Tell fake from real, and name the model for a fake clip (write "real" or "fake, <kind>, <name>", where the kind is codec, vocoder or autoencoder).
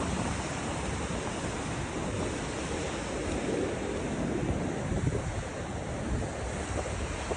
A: real